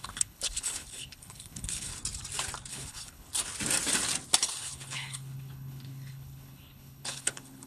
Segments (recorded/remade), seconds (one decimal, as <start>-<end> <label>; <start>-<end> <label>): 0.0-1.9 remade; 1.9-2.7 recorded; 2.7-3.3 remade; 3.3-4.6 recorded; 4.6-7.7 remade